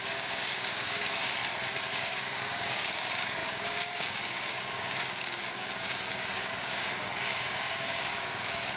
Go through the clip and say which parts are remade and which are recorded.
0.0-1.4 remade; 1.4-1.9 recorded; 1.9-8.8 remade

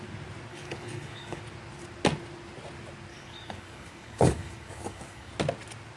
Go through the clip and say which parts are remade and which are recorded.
0.0-0.5 recorded; 0.5-1.4 remade; 1.4-3.1 recorded; 3.1-5.3 remade; 5.3-6.0 recorded